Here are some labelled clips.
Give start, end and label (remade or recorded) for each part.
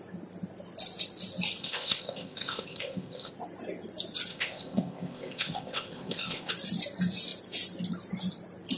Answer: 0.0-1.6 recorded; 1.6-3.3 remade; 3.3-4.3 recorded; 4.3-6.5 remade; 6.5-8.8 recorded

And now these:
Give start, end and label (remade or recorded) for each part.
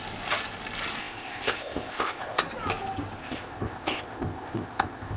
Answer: 0.0-1.0 recorded; 1.0-2.4 remade; 2.4-3.2 recorded; 3.2-5.2 remade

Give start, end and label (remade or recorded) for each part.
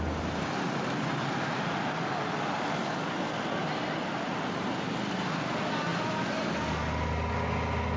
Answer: 0.0-8.0 recorded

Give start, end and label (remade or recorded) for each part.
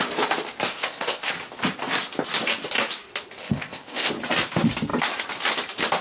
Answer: 0.0-0.7 recorded; 0.7-1.3 remade; 1.3-3.4 recorded; 3.4-4.1 remade; 4.1-6.0 recorded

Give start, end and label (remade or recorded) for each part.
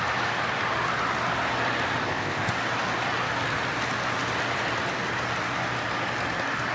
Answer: 0.0-2.0 recorded; 2.0-2.5 remade; 2.5-6.7 recorded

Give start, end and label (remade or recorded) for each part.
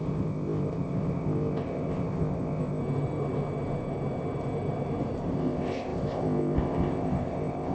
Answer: 0.0-2.8 remade; 2.8-5.3 recorded; 5.3-7.7 remade